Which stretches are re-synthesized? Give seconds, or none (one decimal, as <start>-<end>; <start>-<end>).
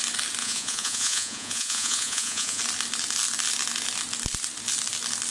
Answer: 0.4-2.6